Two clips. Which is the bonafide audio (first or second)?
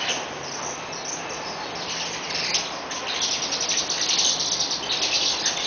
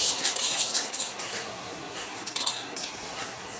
first